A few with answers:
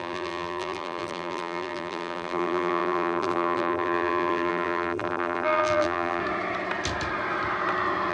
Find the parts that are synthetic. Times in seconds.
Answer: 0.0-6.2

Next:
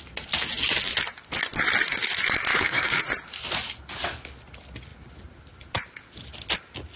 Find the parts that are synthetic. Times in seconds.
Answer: 2.5-3.0

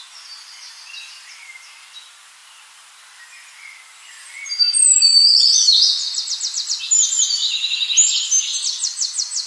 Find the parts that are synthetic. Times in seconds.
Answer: none